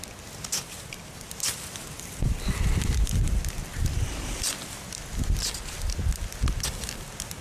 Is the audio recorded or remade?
recorded